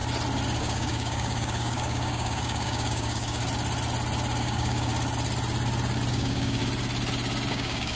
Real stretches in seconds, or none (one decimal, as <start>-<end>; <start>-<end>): 0.0-0.6; 3.4-4.4; 4.9-6.1; 6.6-7.5